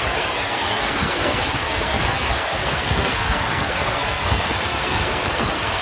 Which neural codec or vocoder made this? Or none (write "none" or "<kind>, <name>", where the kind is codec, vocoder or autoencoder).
codec, SNAC